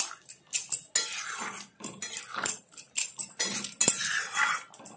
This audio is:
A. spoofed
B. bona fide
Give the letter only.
B